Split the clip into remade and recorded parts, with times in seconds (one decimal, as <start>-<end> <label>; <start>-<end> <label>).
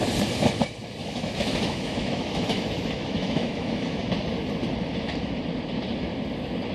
0.0-1.0 recorded; 1.0-4.0 remade; 4.0-6.7 recorded